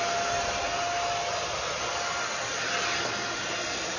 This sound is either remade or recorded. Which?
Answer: recorded